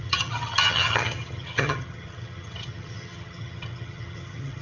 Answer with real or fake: fake